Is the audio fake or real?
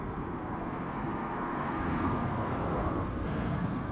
fake